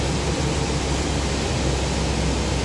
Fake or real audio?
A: real